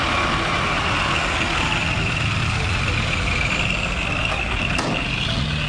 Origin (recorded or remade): recorded